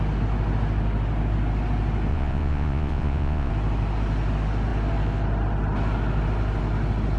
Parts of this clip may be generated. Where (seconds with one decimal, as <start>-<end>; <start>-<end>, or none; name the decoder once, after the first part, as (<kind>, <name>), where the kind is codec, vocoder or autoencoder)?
2.1-3.5 (vocoder, Vocos)

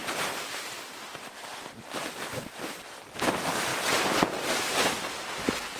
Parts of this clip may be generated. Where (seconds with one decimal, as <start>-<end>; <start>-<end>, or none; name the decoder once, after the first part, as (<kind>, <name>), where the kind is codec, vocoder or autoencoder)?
0.0-2.4 (vocoder, BigVGAN v2)

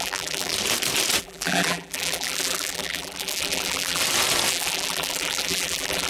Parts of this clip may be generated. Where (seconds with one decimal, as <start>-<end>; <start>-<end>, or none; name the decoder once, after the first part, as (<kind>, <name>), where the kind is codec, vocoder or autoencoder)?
0.0-0.5 (vocoder, BigVGAN v2); 1.2-4.0; 4.5-6.1

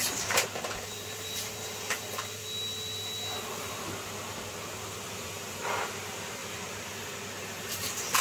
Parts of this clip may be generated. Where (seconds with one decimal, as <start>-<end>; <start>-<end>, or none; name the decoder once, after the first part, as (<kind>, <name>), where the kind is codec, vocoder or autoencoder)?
0.0-2.4 (vocoder, BigVGAN v2); 4.7-8.2

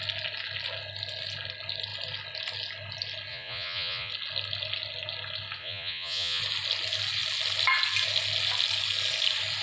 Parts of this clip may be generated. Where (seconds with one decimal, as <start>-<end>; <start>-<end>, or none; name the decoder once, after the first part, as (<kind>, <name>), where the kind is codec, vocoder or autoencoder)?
3.3-4.1 (vocoder, Vocos); 5.6-6.4